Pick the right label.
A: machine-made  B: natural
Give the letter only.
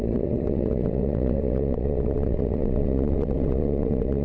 A